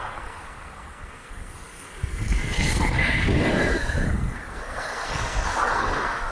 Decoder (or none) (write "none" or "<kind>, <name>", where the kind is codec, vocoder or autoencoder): codec, SNAC